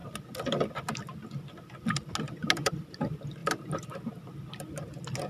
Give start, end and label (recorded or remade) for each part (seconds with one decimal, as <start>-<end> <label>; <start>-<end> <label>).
0.0-3.4 recorded; 3.4-4.0 remade; 4.0-5.3 recorded